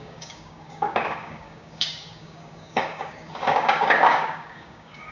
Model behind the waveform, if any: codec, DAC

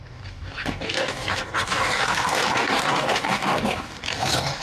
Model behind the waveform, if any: codec, DAC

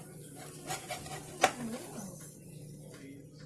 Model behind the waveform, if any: none